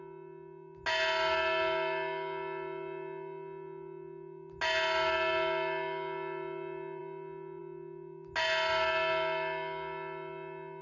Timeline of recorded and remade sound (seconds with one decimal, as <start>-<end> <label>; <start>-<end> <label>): 0.0-10.8 recorded